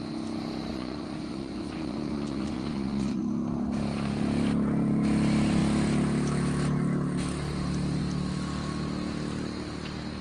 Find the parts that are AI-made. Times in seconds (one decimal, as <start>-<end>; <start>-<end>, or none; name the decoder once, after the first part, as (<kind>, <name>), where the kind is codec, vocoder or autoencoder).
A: 0.7-3.2 (vocoder, Vocos)